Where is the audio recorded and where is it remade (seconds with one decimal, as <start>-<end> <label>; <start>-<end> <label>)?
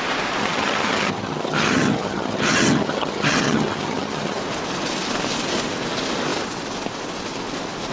0.0-0.4 recorded; 0.4-4.4 remade; 4.4-7.9 recorded